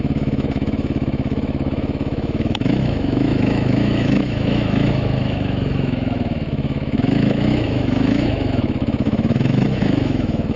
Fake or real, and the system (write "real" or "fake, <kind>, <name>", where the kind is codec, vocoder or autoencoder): fake, autoencoder, DAC-VAE